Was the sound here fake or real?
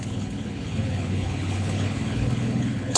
fake